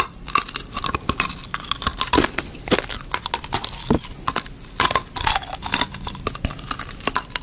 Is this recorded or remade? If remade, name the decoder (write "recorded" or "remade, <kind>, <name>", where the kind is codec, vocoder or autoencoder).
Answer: recorded